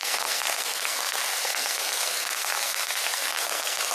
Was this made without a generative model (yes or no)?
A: no